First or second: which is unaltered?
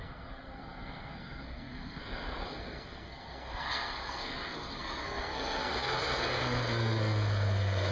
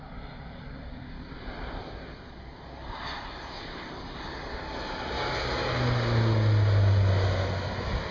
second